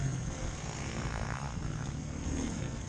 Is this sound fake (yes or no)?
yes